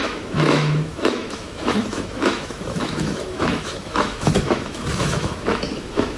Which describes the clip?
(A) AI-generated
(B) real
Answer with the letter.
A